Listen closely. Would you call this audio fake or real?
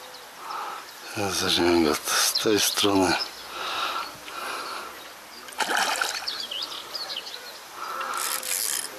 real